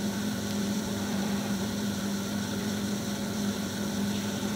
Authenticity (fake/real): fake